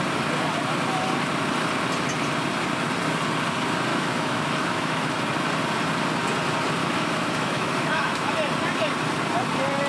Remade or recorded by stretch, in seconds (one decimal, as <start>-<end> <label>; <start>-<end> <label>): 0.0-3.9 recorded; 3.9-5.1 remade; 5.1-6.8 recorded; 6.8-8.3 remade; 8.3-9.9 recorded